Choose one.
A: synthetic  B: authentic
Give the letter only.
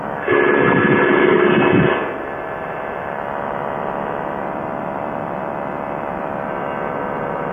B